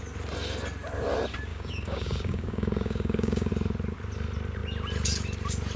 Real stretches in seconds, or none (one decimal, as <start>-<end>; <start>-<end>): 0.0-1.5; 3.5-5.8